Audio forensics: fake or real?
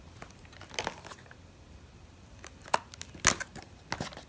real